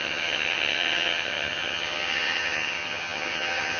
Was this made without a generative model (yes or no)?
no